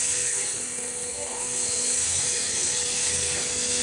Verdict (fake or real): fake